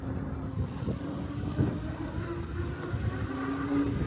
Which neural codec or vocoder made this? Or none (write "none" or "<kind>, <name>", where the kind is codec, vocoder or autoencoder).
none